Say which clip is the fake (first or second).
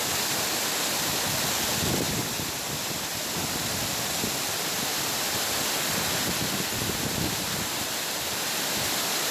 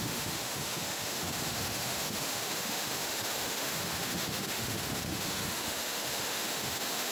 second